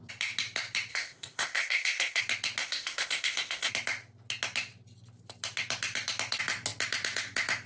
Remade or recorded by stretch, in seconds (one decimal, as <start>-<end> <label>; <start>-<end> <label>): 0.0-0.9 recorded; 0.9-2.2 remade; 2.2-2.6 recorded; 2.6-3.7 remade; 3.7-7.7 recorded